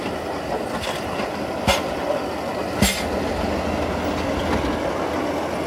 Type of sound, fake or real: real